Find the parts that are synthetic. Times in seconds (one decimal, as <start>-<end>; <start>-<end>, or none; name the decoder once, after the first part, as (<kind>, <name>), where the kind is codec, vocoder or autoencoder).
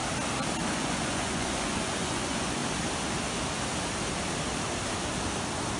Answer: 0.7-2.6 (vocoder, Vocos)